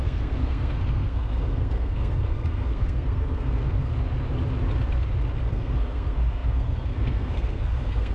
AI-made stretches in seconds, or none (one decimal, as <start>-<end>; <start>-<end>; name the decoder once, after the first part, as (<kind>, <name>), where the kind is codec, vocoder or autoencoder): 0.0-3.9 (codec, SNAC); 5.5-8.1